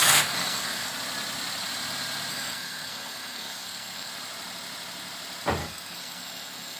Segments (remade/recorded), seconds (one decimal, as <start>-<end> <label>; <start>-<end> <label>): 0.0-0.9 remade; 0.9-2.3 recorded; 2.3-4.1 remade; 4.1-5.6 recorded; 5.6-6.8 remade